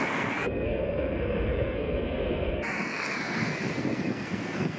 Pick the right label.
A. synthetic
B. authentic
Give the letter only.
A